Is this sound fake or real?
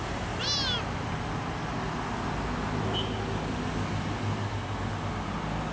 real